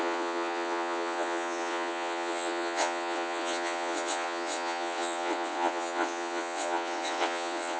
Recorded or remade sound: remade